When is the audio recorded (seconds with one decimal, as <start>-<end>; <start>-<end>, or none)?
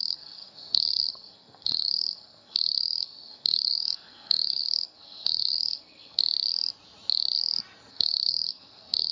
6.2-7.9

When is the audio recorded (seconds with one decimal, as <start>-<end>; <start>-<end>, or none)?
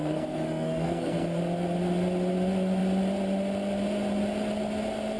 1.4-5.2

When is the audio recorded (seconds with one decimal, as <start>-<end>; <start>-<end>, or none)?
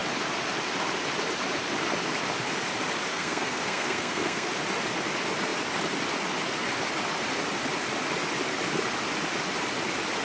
0.0-3.1; 4.5-10.2